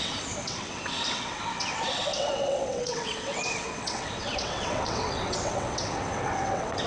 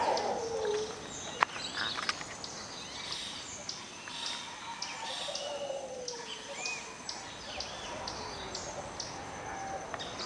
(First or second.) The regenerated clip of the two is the first